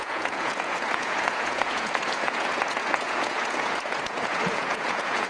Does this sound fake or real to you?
fake